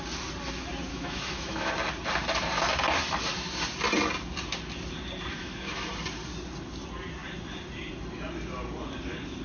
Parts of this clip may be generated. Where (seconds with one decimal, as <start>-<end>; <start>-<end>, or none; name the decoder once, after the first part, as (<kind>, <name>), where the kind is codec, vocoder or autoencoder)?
0.9-1.7 (autoencoder, DAC-VAE); 5.4-5.9